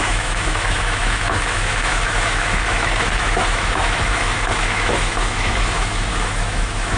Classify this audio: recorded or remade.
remade